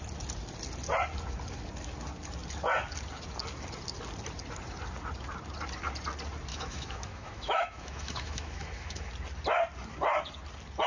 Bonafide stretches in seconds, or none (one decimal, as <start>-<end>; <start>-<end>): 0.0-6.5; 9.1-10.9